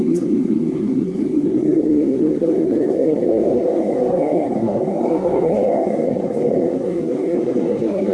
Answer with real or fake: fake